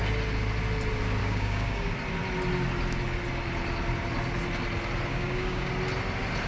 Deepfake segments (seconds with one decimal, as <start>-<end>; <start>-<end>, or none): 1.2-1.9; 5.1-5.7